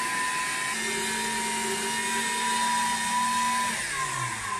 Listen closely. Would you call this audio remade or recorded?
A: recorded